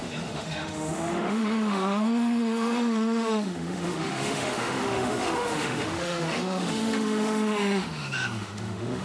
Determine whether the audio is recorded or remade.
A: remade